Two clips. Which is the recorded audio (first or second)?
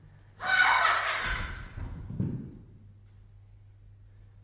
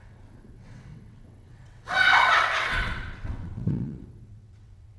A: first